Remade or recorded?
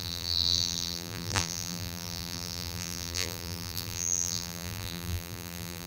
remade